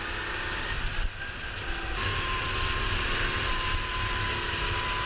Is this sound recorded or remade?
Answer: recorded